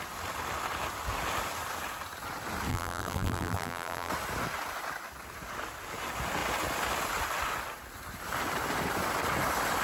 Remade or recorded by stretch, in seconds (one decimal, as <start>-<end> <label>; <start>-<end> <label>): 0.0-2.7 recorded; 2.7-4.1 remade; 4.1-9.8 recorded